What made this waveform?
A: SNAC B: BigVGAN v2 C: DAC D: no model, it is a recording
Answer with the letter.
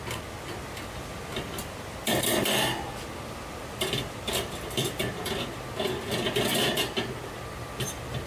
D